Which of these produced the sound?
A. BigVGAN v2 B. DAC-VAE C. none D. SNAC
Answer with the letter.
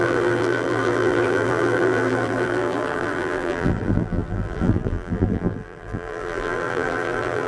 A